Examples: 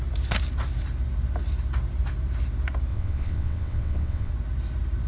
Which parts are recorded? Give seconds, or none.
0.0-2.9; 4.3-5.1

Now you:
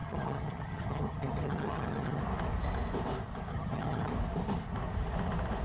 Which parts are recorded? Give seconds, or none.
2.2-3.5; 4.1-5.6

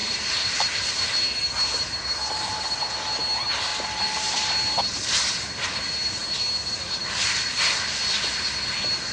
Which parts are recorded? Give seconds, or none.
1.0-9.1

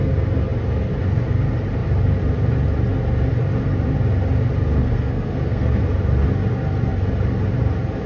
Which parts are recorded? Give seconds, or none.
0.0-4.8; 5.8-8.1

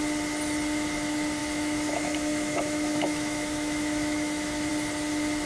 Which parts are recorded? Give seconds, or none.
0.0-1.4; 4.7-5.5

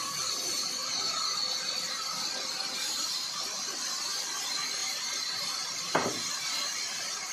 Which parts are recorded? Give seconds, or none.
0.8-2.3

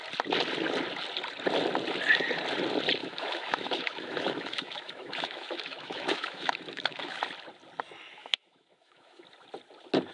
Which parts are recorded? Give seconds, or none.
0.0-3.0; 7.2-8.2; 9.2-10.1

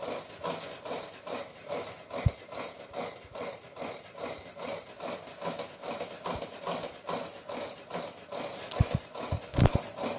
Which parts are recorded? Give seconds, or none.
0.0-1.4; 4.9-10.2